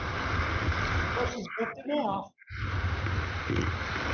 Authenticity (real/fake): real